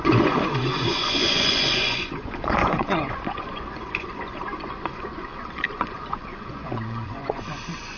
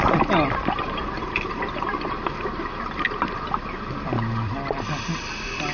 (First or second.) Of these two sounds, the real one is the second